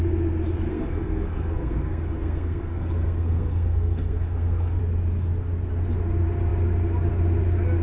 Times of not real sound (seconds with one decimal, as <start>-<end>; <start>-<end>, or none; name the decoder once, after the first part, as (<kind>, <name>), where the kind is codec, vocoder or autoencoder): 0.7-4.8 (codec, SNAC)